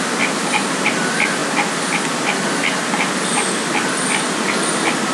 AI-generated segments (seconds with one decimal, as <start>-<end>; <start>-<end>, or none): none